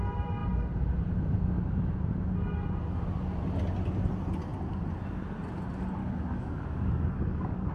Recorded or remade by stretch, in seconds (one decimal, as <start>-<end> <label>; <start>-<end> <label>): 0.0-6.0 recorded; 6.0-7.7 remade